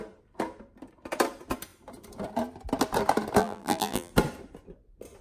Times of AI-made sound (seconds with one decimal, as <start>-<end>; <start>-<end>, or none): 3.4-4.1